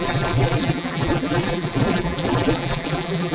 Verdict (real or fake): fake